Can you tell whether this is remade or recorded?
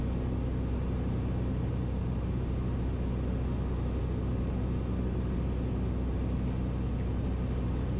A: recorded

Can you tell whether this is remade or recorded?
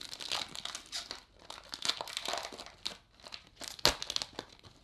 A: recorded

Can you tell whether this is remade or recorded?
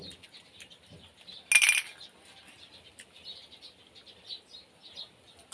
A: recorded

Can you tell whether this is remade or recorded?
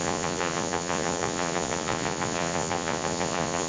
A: remade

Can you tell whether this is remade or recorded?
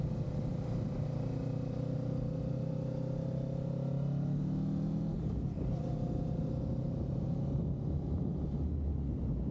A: recorded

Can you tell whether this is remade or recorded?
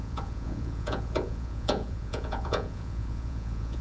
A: remade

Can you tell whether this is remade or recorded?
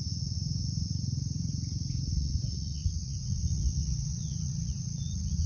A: remade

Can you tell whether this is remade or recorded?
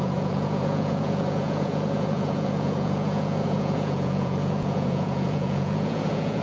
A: remade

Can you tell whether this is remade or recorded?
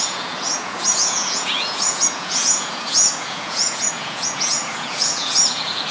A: remade